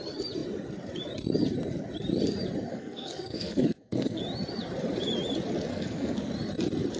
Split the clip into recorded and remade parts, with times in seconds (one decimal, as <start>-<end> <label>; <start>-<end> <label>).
0.0-2.7 recorded; 2.7-4.2 remade; 4.2-5.7 recorded; 5.7-6.3 remade; 6.3-7.0 recorded